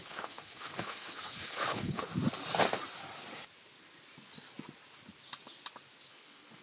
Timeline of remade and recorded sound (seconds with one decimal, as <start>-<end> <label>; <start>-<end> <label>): 0.0-2.1 remade; 2.1-6.1 recorded; 6.1-6.6 remade